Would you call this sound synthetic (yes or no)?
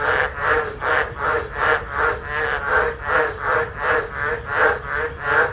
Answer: no